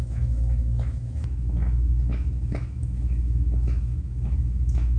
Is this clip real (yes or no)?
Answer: no